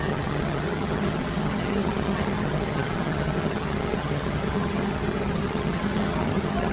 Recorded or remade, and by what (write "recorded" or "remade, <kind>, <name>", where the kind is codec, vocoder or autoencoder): remade, vocoder, HiFi-GAN